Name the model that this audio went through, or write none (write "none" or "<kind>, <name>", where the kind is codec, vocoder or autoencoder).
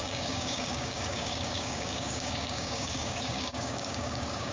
codec, DAC